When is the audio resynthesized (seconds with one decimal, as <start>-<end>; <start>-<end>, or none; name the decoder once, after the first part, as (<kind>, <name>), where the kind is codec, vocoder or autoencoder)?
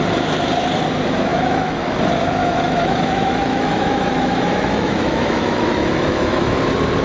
1.3-1.8 (autoencoder, DAC-VAE); 2.4-6.6